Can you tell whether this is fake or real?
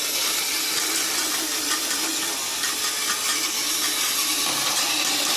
real